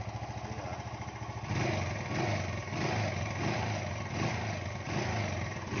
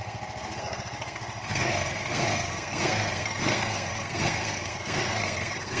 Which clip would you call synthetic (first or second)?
second